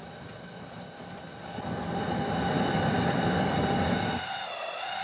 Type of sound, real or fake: real